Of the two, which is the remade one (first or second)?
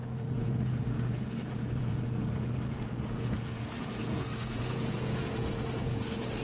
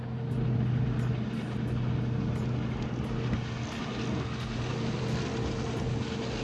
first